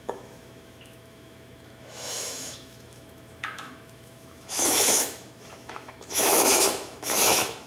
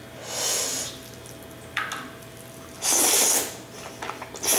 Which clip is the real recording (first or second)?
second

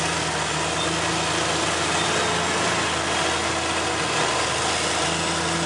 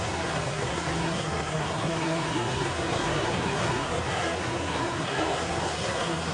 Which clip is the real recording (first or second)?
first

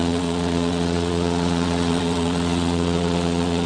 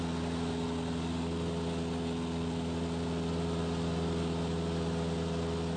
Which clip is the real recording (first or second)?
second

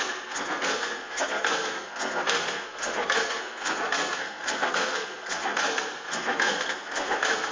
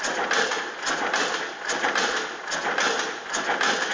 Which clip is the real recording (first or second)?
second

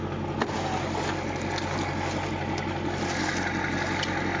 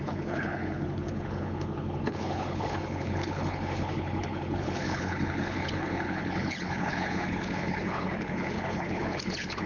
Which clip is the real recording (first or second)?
first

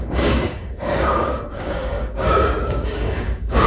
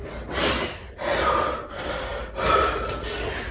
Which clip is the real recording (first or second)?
second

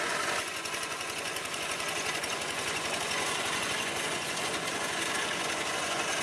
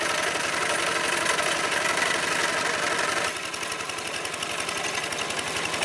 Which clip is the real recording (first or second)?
second